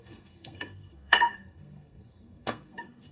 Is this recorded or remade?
remade